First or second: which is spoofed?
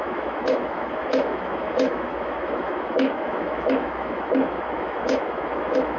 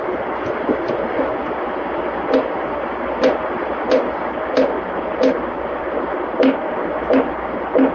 first